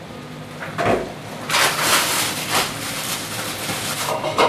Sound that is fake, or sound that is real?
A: real